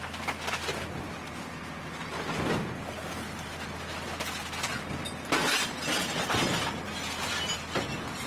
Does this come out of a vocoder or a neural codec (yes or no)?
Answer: no